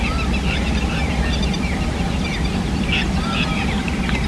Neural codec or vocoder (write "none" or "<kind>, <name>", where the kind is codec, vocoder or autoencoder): none